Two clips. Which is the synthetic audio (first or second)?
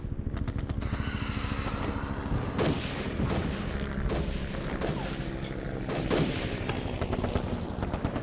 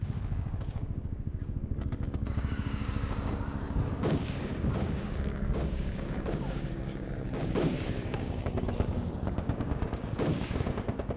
second